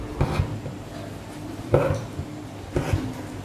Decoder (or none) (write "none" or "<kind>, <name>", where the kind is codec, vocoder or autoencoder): none